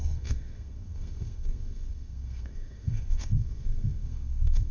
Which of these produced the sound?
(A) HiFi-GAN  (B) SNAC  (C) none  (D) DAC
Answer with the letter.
B